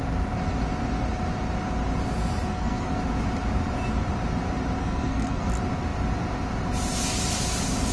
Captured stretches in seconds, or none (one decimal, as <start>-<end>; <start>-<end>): 0.0-2.5; 3.0-4.8; 5.5-7.9